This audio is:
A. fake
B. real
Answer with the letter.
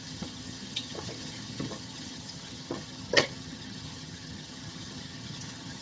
A